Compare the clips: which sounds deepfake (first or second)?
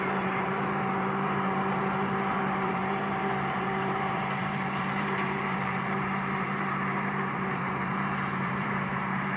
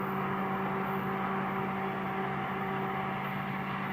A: first